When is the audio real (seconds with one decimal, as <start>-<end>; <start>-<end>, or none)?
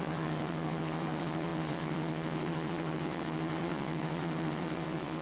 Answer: none